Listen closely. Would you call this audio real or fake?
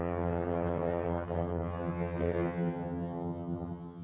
fake